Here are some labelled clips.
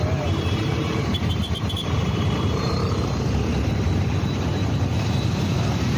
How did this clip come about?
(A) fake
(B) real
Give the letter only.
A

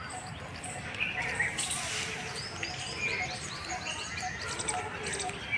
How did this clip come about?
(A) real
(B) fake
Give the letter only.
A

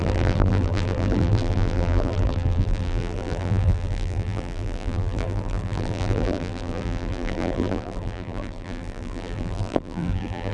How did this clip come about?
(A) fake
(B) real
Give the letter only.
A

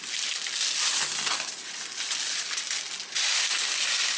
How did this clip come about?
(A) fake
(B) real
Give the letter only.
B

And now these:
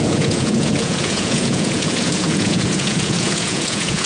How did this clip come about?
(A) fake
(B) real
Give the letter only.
A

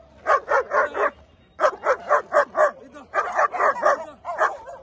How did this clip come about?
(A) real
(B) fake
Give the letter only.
A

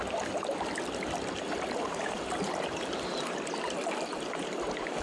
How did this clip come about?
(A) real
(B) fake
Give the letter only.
A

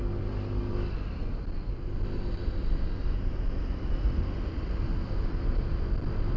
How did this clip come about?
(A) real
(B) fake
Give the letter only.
A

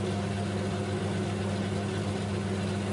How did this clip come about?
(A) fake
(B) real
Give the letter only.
B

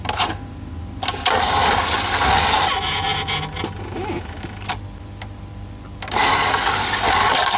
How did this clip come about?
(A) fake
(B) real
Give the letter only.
B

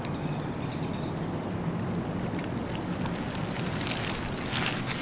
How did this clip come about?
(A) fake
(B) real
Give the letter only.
B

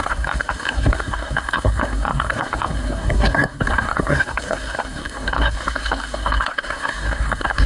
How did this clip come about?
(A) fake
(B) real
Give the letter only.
A